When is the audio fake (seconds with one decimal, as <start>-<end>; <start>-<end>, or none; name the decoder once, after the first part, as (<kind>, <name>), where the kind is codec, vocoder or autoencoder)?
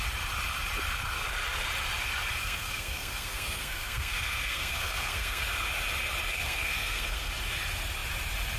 2.4-5.4 (codec, SNAC); 6.3-7.3